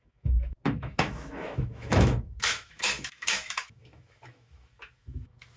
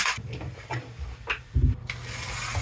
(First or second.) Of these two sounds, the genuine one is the second